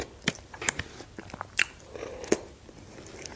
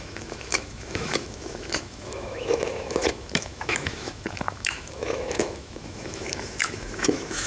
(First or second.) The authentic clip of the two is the first